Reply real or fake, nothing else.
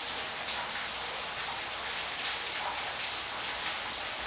real